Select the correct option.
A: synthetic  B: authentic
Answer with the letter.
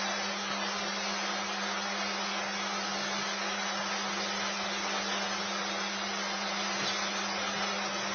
B